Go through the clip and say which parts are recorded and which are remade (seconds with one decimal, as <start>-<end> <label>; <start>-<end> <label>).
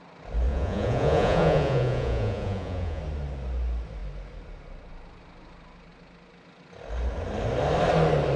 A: 0.0-0.5 recorded; 0.5-3.0 remade; 3.0-8.4 recorded